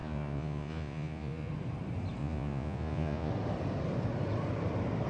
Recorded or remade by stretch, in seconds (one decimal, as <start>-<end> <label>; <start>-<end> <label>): 0.0-1.5 remade; 1.5-2.2 recorded; 2.2-3.3 remade; 3.3-5.1 recorded